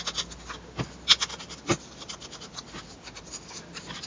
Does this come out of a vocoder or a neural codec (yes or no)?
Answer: no